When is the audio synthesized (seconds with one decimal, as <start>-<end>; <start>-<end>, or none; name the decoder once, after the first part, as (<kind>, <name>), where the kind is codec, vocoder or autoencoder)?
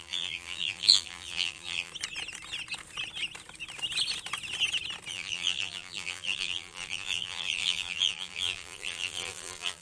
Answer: 0.0-1.9 (vocoder, BigVGAN v2); 5.1-9.8